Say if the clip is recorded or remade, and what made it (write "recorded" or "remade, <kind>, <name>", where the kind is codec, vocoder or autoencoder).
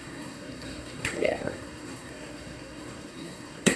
remade, codec, SNAC